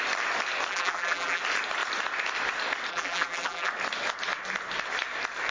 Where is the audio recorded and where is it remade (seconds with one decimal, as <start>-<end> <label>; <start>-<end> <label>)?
0.0-0.7 recorded; 0.7-1.4 remade; 1.4-2.9 recorded; 2.9-3.7 remade; 3.7-5.5 recorded